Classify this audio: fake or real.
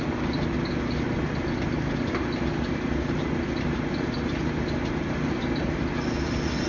real